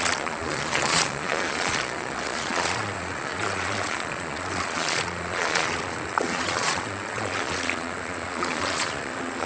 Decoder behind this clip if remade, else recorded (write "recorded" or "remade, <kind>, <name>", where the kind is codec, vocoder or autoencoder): remade, vocoder, Vocos